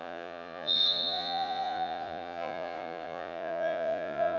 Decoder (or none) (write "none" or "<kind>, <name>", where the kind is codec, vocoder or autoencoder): vocoder, Vocos